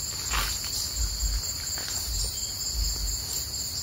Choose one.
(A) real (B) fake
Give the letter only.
A